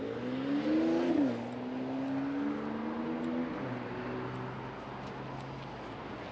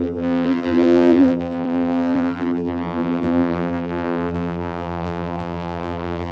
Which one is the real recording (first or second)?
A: first